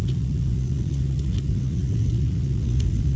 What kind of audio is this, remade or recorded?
remade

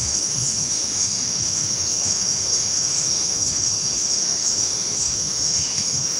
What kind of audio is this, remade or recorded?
remade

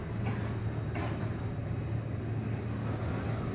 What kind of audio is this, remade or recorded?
recorded